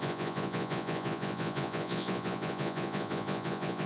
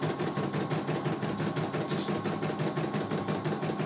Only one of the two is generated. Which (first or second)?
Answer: first